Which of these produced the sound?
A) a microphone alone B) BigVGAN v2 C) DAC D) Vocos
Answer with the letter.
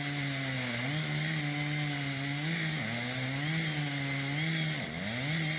A